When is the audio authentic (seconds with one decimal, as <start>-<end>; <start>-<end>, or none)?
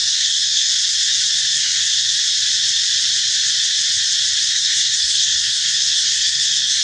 0.7-1.5; 2.1-4.5